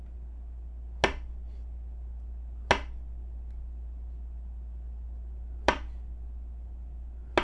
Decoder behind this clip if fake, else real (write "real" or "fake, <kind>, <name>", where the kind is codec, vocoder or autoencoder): real